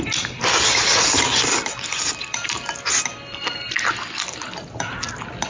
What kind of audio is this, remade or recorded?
recorded